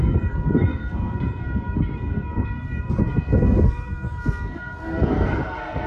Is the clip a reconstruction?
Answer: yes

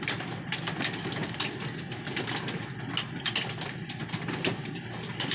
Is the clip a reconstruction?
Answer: no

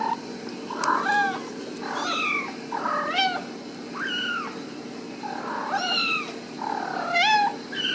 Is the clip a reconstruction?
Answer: no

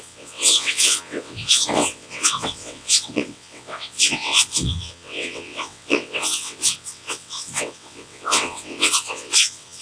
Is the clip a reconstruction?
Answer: yes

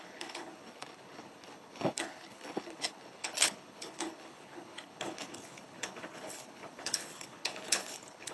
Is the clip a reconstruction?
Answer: yes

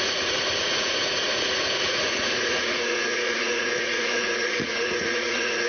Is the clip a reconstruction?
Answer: yes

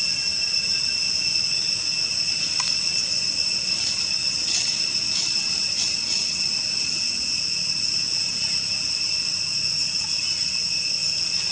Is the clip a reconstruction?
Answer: no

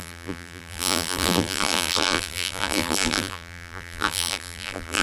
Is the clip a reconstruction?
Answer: yes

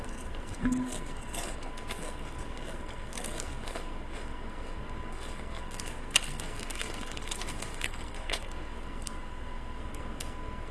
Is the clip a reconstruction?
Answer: yes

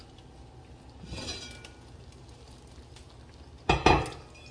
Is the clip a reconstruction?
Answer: no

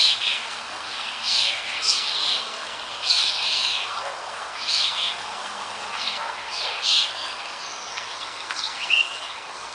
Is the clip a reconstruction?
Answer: yes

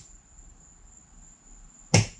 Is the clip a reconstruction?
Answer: no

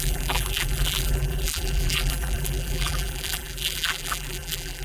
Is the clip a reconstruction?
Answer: yes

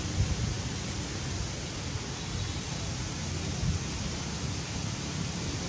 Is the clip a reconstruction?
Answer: no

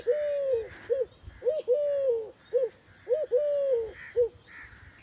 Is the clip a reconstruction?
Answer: no